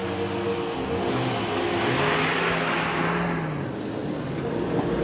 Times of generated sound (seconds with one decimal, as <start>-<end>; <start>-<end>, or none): none

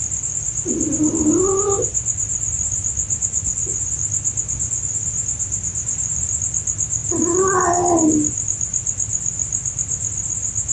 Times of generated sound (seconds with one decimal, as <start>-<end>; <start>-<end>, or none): none

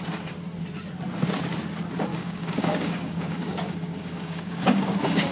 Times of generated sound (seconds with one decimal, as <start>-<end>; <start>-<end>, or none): 2.1-5.3

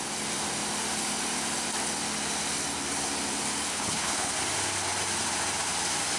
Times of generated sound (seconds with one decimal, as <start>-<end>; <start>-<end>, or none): 3.7-4.3

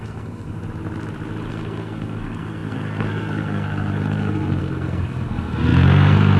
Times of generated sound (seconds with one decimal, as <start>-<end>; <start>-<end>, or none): 0.0-0.6; 1.5-6.4

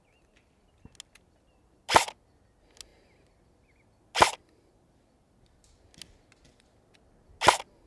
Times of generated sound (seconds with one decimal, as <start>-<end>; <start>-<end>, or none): none

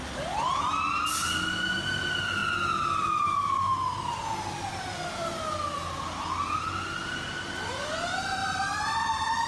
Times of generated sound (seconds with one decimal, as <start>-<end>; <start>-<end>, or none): 8.4-9.5